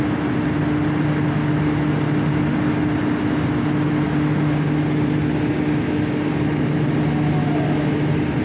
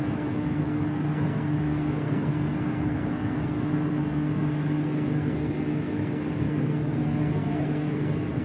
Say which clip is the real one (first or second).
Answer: first